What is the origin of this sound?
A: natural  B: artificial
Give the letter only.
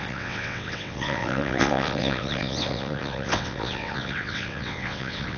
B